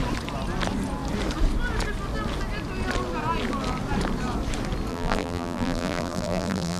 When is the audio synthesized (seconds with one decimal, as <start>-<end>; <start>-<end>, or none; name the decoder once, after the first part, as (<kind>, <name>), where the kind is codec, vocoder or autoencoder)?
4.9-6.8 (vocoder, BigVGAN v2)